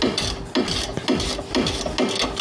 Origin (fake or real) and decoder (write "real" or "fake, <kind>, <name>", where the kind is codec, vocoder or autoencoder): real